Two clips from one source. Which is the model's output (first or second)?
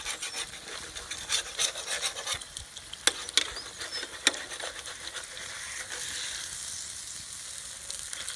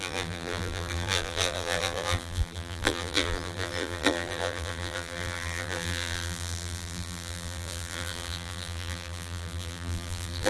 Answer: second